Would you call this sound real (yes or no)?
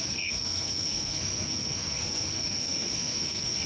no